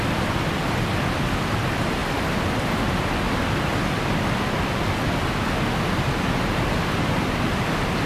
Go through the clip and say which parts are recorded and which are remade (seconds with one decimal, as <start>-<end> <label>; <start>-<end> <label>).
0.0-8.1 recorded